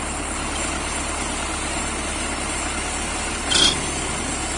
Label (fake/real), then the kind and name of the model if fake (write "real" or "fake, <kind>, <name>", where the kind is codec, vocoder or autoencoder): real